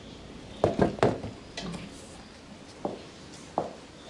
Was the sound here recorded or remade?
recorded